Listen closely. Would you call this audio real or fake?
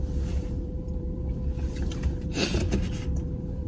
fake